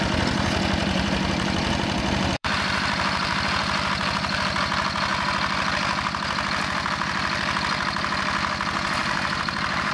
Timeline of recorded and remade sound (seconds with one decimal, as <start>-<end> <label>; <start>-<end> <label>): 0.0-0.8 recorded; 0.8-3.6 remade; 3.6-9.0 recorded; 9.0-9.9 remade